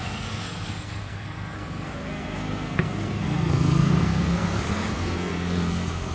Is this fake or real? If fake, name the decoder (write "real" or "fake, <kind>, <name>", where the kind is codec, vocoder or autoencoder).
fake, codec, SNAC